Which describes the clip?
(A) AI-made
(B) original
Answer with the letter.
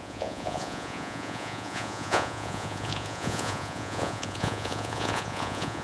A